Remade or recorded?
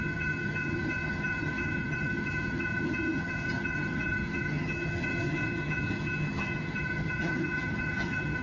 remade